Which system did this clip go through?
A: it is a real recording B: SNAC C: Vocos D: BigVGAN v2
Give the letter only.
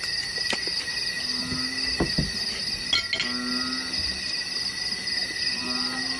A